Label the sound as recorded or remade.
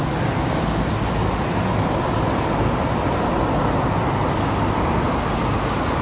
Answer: recorded